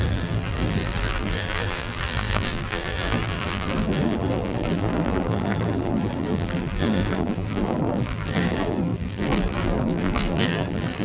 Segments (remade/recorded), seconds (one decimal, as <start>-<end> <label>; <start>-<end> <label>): 0.0-11.0 remade